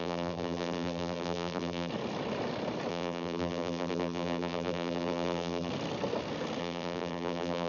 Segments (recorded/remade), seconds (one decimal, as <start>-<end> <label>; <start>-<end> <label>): 0.0-1.9 remade; 1.9-2.9 recorded; 2.9-5.7 remade; 5.7-6.6 recorded; 6.6-7.7 remade